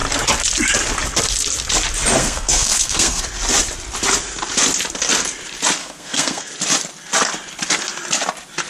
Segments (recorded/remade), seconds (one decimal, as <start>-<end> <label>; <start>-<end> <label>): 0.0-2.2 recorded; 2.2-3.2 remade; 3.2-5.8 recorded; 5.8-6.5 remade; 6.5-8.7 recorded